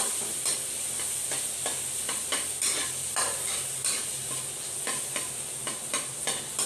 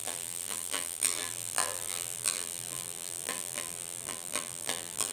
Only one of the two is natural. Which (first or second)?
first